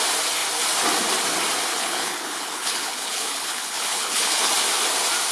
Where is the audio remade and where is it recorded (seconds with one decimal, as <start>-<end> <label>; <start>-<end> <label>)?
0.0-1.7 recorded; 1.7-4.5 remade; 4.5-5.3 recorded